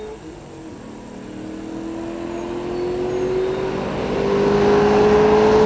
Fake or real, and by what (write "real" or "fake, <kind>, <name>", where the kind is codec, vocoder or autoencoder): real